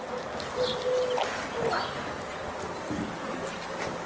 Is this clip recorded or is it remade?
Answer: recorded